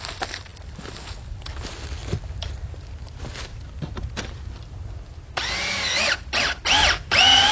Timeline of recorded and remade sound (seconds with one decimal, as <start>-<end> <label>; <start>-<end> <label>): 0.0-2.0 remade; 2.0-5.6 recorded; 5.6-7.5 remade